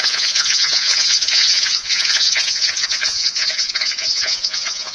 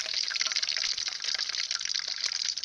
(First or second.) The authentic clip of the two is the second